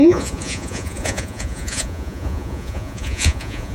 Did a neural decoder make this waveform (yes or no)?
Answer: yes